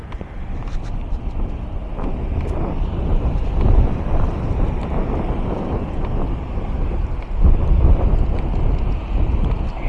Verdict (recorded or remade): recorded